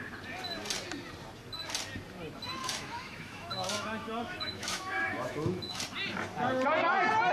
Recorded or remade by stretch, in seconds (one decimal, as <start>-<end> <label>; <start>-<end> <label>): 0.0-2.6 recorded; 2.6-5.8 remade; 5.8-7.3 recorded